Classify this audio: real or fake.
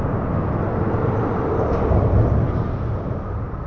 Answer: real